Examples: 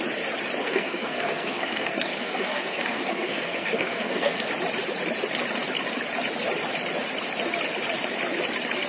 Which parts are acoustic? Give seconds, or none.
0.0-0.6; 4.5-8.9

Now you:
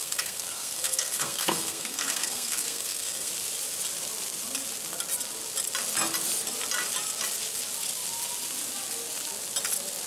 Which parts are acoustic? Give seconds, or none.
3.3-10.1

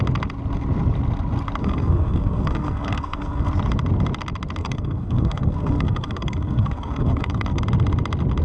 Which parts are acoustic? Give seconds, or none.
0.0-1.6; 3.5-4.6; 7.6-8.4